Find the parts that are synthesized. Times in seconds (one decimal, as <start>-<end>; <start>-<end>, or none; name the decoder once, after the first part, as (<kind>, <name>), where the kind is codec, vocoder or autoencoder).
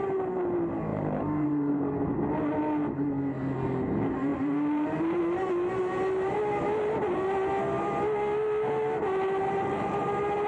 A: 0.9-1.8 (vocoder, BigVGAN v2); 4.3-5.2